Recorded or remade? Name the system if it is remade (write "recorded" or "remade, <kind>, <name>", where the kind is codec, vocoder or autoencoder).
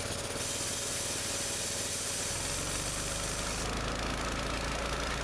recorded